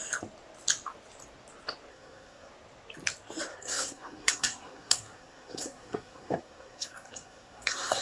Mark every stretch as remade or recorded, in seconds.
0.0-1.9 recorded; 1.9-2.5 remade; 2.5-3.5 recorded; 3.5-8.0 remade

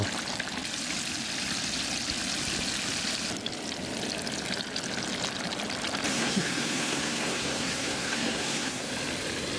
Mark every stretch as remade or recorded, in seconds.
0.0-6.1 recorded; 6.1-8.9 remade; 8.9-9.6 recorded